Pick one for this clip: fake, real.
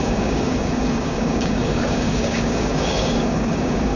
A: fake